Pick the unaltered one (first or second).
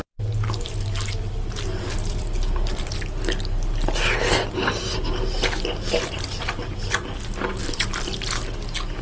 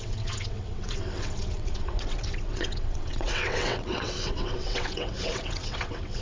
first